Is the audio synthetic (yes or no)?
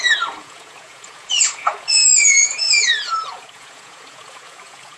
yes